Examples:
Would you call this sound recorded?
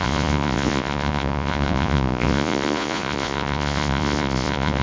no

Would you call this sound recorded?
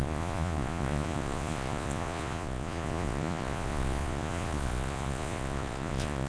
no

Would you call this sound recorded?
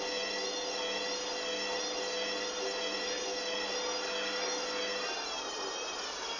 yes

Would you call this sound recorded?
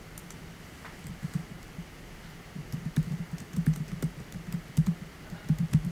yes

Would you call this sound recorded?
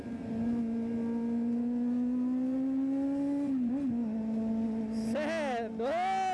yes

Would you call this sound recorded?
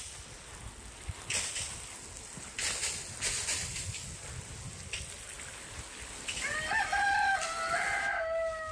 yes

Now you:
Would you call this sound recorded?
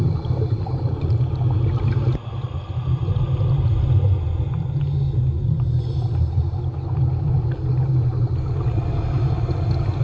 yes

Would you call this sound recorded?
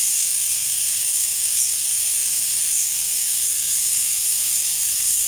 no